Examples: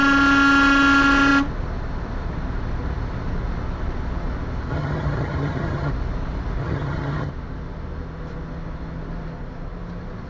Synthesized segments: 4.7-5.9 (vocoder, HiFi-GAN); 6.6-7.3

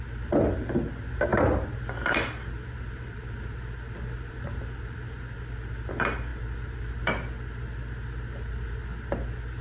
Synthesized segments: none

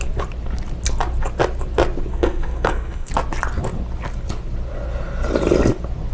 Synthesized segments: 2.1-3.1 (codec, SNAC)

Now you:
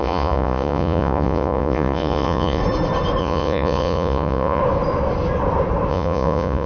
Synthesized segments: 0.0-2.6 (vocoder, Vocos); 3.2-4.6; 5.9-6.7

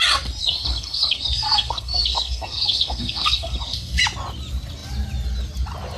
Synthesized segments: 0.4-4.0 (codec, SNAC)

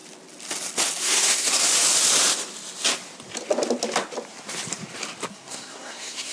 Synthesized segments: 1.0-1.6 (codec, SNAC); 5.3-6.3